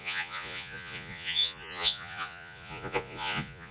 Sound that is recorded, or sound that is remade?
remade